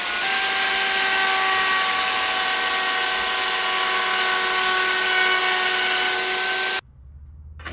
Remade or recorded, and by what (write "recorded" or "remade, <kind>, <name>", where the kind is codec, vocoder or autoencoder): recorded